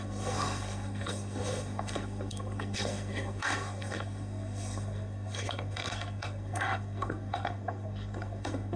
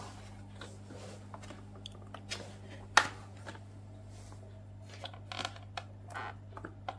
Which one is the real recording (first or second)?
second